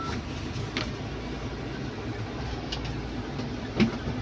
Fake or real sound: real